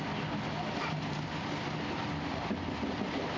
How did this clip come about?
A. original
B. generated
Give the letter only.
A